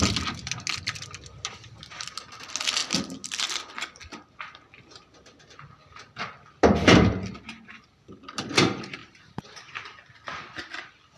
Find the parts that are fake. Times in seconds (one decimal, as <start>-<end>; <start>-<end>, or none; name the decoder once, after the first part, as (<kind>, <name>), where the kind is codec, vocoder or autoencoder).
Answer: 9.0-9.7 (vocoder, BigVGAN v2)